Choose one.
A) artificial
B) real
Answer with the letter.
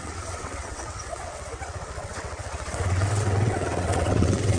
A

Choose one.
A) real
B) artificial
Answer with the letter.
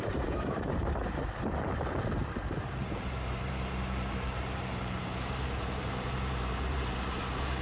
B